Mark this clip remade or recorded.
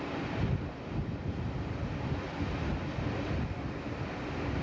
recorded